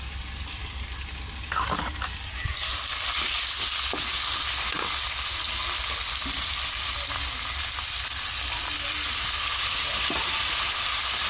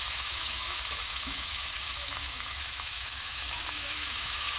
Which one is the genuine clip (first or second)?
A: first